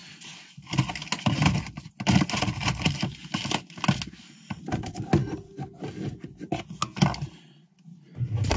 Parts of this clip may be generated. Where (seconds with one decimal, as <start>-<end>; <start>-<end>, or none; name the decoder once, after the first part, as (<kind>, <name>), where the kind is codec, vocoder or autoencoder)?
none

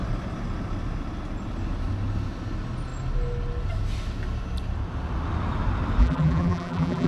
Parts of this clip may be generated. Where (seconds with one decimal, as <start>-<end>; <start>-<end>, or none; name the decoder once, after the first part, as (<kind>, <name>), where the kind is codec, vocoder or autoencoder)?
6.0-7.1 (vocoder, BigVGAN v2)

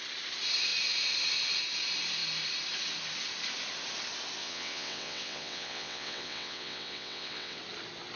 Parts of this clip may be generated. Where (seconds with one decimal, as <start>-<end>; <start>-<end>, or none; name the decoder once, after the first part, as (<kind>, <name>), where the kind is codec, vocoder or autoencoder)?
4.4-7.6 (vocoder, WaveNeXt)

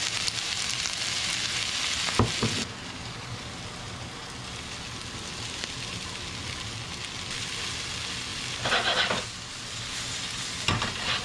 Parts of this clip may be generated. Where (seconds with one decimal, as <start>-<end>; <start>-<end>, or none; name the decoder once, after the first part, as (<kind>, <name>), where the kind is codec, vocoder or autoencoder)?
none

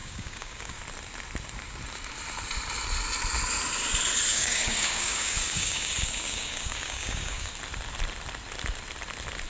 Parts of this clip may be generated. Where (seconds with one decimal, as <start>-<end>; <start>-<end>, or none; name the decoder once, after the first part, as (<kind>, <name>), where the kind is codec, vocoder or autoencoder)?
0.0-0.8 (codec, DAC); 4.3-7.5

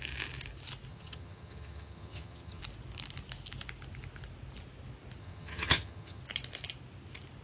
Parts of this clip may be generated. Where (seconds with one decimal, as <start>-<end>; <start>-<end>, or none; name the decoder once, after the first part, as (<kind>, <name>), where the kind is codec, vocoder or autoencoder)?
0.9-2.6 (vocoder, HiFi-GAN); 5.2-6.2

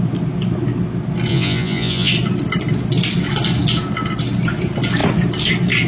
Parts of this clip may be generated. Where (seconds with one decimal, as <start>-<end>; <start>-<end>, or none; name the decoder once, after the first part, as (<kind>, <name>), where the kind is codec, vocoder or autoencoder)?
1.3-2.1 (vocoder, Vocos)